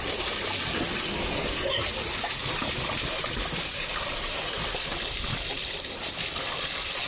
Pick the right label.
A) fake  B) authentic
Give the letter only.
B